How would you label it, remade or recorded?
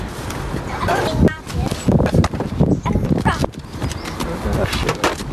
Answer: recorded